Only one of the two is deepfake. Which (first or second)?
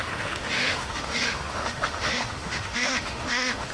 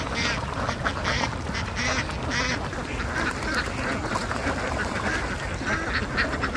first